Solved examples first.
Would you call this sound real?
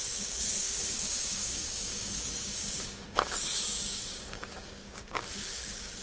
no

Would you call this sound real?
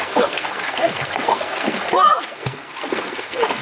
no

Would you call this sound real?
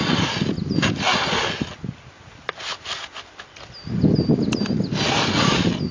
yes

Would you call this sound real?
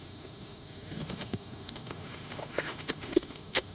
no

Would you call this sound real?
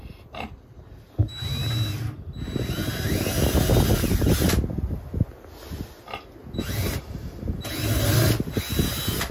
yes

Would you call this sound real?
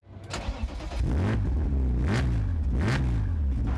yes